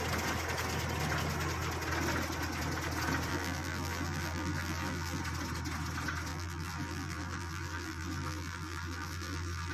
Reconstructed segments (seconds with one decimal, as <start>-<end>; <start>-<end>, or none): 3.3-5.2; 6.3-9.7